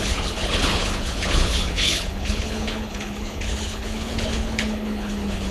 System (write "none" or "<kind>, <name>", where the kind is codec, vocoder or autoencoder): codec, HILCodec